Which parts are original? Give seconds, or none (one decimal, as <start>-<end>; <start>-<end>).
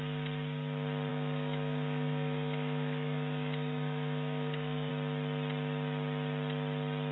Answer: 0.0-1.1; 4.9-7.1